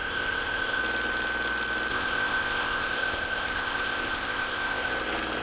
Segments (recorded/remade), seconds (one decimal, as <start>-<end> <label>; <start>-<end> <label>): 0.0-0.8 remade; 0.8-1.9 recorded; 1.9-4.9 remade; 4.9-5.4 recorded